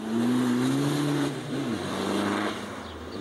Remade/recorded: recorded